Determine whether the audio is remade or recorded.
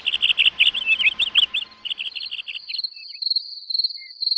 recorded